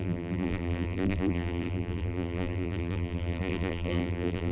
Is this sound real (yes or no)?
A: no